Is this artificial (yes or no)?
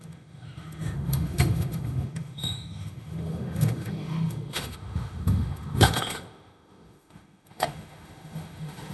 yes